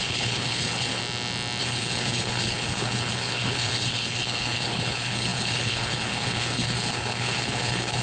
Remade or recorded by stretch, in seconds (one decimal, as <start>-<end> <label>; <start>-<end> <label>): 0.0-1.0 remade; 1.0-1.6 recorded; 1.6-8.0 remade

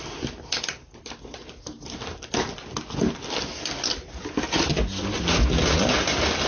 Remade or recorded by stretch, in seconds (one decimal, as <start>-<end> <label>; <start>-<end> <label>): 0.0-6.5 recorded

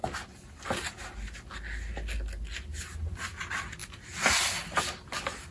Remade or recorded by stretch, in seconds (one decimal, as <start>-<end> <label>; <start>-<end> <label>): 0.0-3.8 recorded; 3.8-4.8 remade; 4.8-5.5 recorded

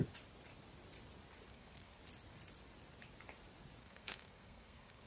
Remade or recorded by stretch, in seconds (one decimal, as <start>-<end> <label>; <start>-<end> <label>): 0.0-1.5 recorded; 1.5-2.0 remade; 2.0-3.8 recorded; 3.8-5.1 remade

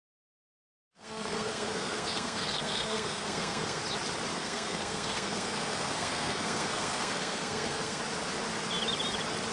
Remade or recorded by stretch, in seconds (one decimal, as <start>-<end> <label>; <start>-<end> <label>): 0.0-3.8 remade; 3.8-4.3 recorded; 4.3-8.0 remade; 8.0-9.5 recorded